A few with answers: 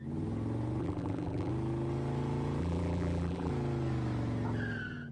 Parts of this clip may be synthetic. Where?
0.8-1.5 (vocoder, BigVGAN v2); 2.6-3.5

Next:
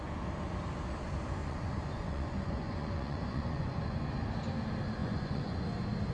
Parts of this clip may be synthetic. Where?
1.4-4.1 (vocoder, Vocos); 5.0-5.6